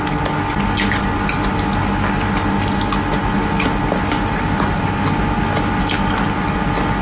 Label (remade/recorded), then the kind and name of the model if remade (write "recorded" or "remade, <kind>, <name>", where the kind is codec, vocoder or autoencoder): recorded